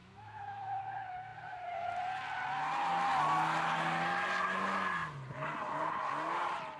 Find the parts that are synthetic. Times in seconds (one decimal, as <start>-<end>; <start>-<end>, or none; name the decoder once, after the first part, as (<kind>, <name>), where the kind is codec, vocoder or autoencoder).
0.0-0.8 (autoencoder, DAC-VAE)